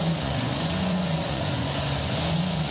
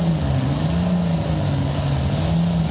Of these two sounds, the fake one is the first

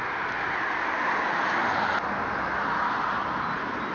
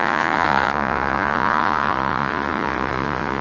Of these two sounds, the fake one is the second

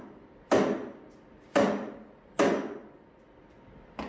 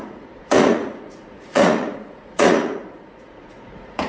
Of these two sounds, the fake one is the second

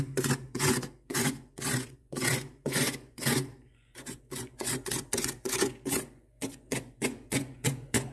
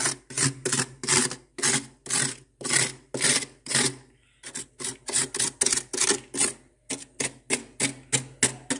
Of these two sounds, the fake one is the first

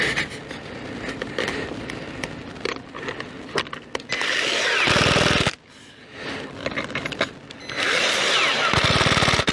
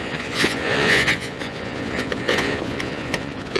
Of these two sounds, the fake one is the second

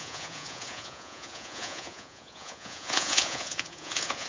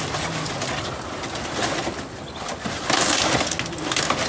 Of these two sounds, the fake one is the first